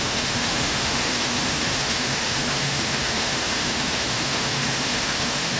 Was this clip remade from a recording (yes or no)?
yes